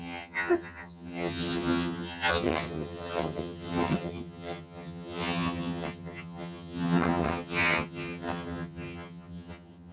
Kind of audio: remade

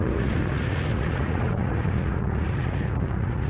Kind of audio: remade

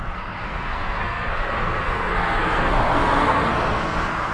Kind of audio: remade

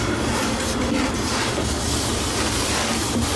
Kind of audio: recorded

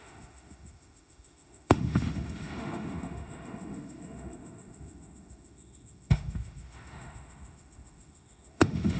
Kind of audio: remade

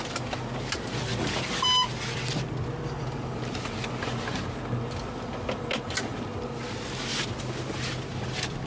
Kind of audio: recorded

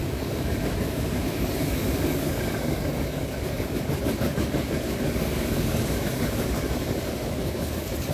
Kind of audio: remade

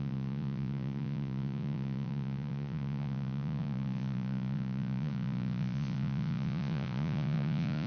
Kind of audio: remade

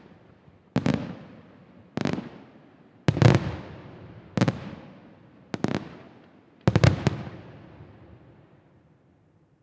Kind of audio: recorded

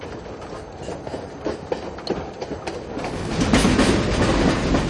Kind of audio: recorded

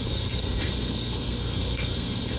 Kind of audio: remade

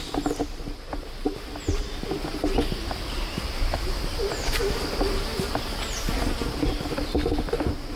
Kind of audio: recorded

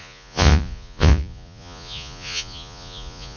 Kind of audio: remade